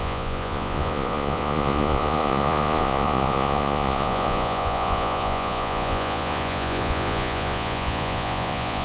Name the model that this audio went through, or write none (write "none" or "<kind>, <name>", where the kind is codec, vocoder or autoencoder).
vocoder, Vocos